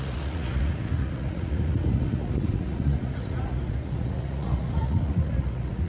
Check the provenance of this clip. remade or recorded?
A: remade